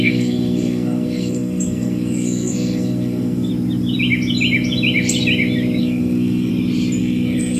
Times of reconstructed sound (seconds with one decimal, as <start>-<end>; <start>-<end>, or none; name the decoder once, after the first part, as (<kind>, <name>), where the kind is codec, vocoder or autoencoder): 0.0-3.5 (codec, SNAC); 5.8-6.5; 7.0-7.6